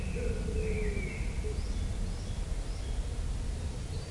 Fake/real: real